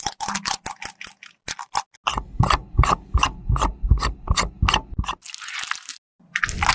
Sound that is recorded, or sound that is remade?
recorded